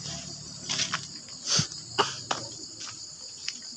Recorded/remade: recorded